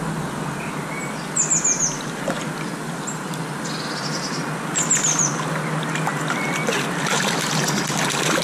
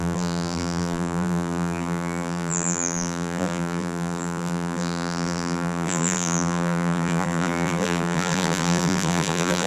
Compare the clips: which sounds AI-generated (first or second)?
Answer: second